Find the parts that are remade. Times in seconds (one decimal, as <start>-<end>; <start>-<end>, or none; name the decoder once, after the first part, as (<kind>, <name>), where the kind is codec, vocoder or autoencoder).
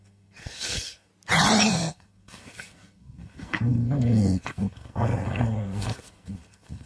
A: 0.0-1.1 (codec, SNAC); 1.7-6.9